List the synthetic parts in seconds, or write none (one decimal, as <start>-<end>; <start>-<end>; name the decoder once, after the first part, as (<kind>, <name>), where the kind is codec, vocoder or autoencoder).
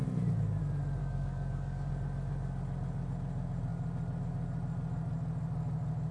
1.0-1.9 (codec, DAC)